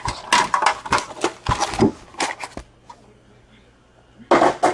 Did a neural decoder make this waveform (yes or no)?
no